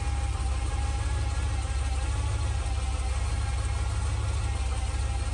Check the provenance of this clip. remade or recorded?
recorded